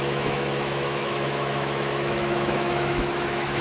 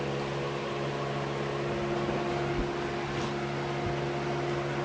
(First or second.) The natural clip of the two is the second